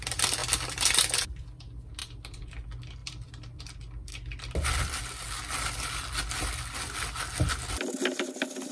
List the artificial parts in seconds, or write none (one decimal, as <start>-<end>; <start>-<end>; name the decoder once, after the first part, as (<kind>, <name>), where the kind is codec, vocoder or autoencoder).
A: 0.4-1.6 (vocoder, BigVGAN v2); 2.0-2.5; 3.0-3.6